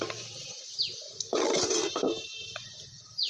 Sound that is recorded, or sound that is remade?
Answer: remade